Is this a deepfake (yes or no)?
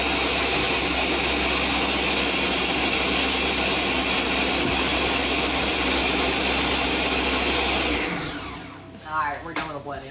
no